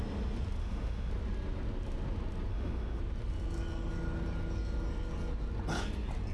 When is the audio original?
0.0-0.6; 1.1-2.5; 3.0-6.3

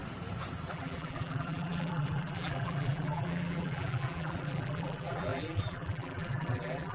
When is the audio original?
0.0-0.7

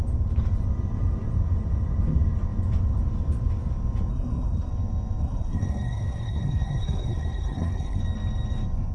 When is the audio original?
0.0-4.1; 4.7-5.2; 8.0-8.9

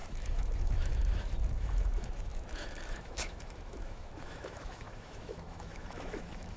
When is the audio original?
none

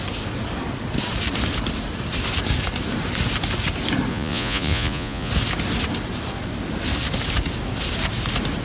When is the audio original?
0.0-4.1; 5.3-8.6

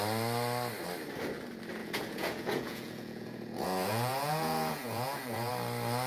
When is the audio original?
0.0-1.8; 5.5-6.1

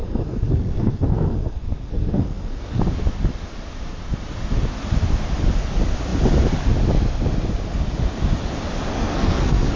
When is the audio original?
2.8-8.9

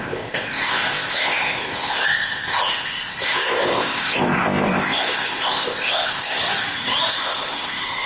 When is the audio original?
6.4-7.1